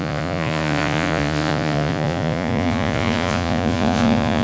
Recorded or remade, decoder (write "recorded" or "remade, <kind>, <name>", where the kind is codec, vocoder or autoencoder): remade, vocoder, Vocos